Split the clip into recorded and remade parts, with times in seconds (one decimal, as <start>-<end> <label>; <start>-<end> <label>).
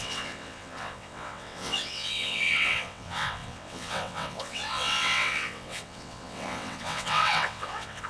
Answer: 0.0-8.1 remade